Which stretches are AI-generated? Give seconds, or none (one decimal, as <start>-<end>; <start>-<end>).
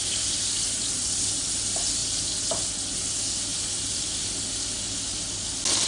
0.0-1.2; 2.0-2.7; 3.5-4.2